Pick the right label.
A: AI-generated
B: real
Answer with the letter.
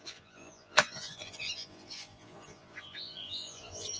A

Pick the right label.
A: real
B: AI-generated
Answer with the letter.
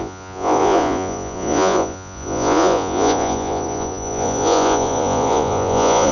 B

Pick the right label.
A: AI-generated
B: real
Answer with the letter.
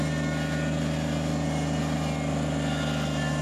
B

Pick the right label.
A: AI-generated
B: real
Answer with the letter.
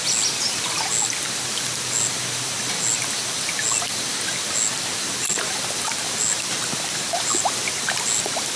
B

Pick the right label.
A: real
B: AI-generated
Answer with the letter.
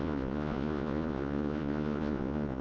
B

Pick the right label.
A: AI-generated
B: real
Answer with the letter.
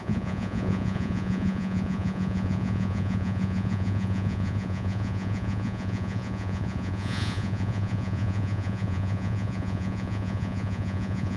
A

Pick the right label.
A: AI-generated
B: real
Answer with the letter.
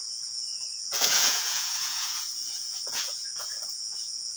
A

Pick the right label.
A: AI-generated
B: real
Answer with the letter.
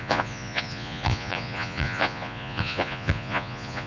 A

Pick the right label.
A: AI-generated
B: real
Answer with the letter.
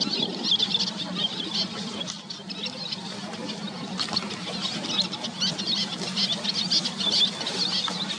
B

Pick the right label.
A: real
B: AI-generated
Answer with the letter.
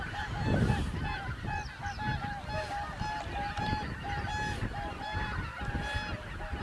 A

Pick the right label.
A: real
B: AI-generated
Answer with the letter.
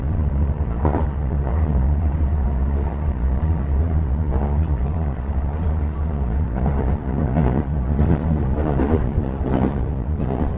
B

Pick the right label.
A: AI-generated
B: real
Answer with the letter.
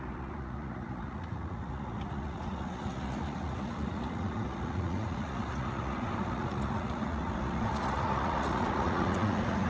A